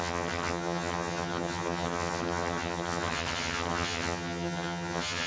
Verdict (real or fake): fake